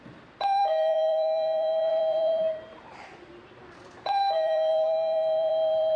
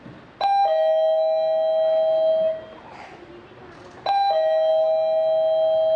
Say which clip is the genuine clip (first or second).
second